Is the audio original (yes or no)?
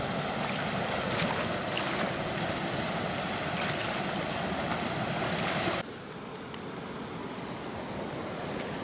yes